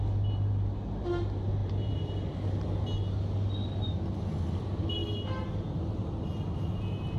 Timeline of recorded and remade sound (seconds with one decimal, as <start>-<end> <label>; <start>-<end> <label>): 0.0-1.6 recorded; 1.6-2.1 remade; 2.1-7.2 recorded